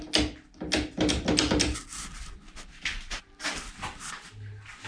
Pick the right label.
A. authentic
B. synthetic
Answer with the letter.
A